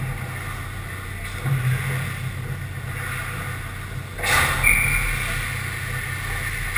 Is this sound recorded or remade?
recorded